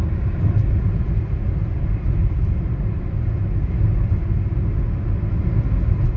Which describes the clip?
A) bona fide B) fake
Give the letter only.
A